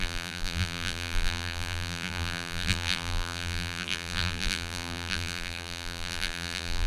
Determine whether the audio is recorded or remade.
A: remade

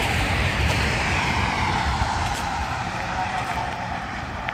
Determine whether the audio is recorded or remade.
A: remade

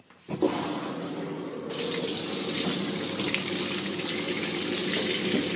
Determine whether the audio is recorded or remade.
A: recorded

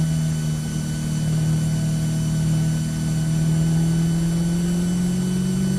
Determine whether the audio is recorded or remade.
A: recorded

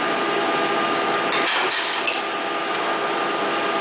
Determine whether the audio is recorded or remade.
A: recorded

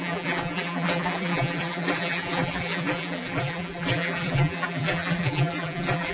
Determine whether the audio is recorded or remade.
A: remade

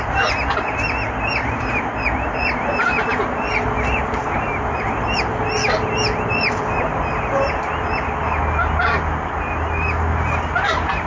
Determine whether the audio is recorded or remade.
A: recorded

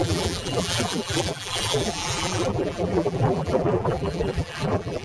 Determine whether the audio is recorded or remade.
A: remade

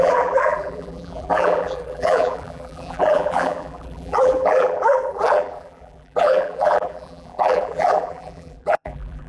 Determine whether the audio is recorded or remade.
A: remade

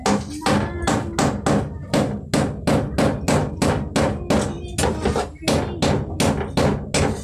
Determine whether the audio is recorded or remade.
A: recorded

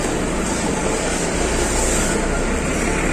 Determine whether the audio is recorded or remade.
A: recorded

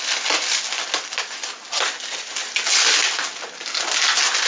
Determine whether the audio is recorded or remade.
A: recorded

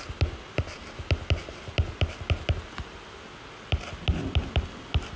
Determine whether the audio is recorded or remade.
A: recorded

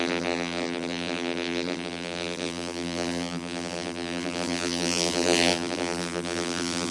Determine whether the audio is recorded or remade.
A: remade